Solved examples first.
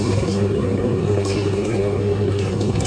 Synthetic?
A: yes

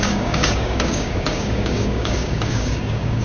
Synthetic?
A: yes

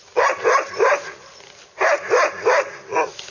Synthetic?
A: no